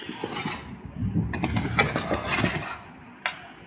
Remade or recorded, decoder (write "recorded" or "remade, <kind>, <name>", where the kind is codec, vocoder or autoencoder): recorded